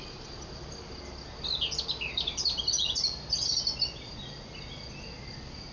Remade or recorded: recorded